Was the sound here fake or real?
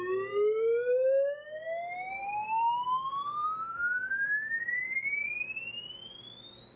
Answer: real